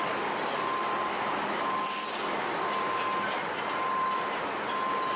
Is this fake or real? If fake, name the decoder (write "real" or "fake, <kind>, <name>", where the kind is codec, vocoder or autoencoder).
real